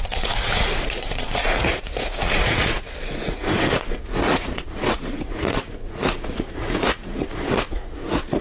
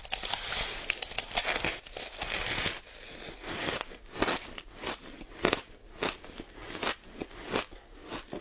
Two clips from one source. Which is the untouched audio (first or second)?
second